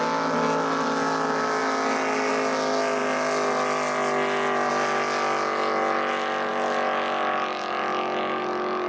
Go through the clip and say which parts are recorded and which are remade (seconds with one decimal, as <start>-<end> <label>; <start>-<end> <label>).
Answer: 0.0-8.9 recorded